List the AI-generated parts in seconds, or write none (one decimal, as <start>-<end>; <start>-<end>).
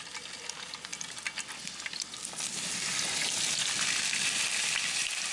none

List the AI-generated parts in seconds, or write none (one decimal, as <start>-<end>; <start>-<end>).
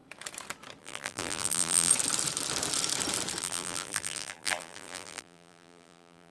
0.8-1.9; 3.4-6.3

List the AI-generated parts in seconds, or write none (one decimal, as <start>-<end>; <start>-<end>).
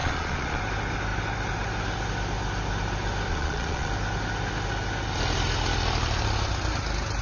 0.0-0.6; 3.3-3.9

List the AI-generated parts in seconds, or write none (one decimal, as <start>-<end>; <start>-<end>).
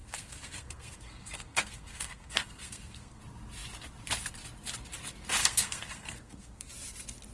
0.0-3.2; 5.4-6.7